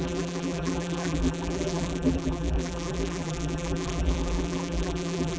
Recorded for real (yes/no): no